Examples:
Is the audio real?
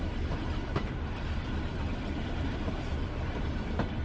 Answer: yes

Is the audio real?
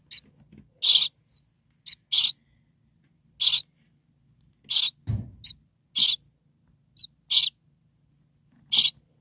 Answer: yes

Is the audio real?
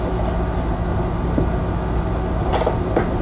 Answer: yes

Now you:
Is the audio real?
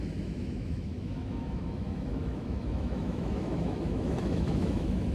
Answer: no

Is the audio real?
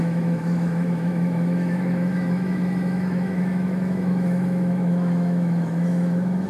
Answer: no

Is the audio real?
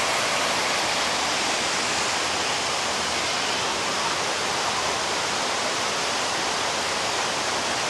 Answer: yes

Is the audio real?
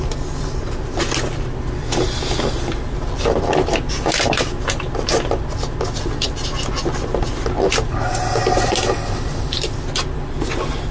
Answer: yes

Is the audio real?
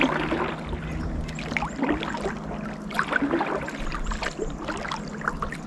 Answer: yes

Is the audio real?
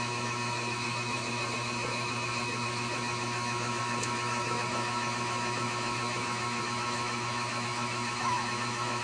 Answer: no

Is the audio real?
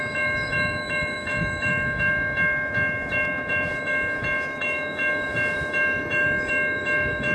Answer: no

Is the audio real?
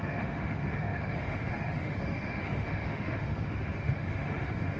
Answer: no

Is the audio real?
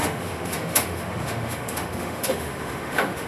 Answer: no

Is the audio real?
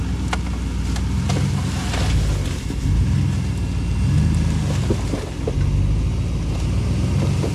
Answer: yes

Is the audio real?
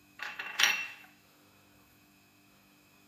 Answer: no